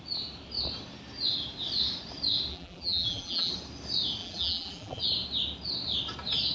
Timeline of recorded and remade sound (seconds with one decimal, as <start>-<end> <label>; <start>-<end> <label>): 0.0-2.5 recorded; 2.5-3.5 remade; 3.5-4.2 recorded; 4.2-5.0 remade; 5.0-6.5 recorded